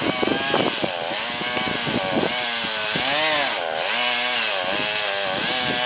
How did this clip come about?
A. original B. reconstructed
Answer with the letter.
A